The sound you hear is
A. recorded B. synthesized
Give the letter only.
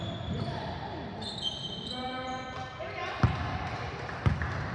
A